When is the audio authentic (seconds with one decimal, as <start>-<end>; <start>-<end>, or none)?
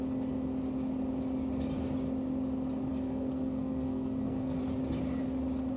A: 0.0-2.9; 4.6-5.8